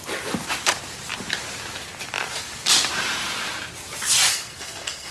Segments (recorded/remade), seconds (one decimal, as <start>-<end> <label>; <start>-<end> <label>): 0.0-4.3 recorded; 4.3-5.1 remade